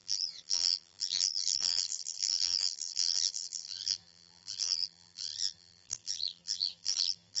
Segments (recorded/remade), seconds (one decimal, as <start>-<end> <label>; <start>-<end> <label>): 0.0-7.4 remade